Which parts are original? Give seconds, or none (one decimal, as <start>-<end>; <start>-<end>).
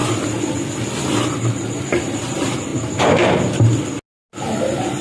0.0-1.2; 2.7-5.0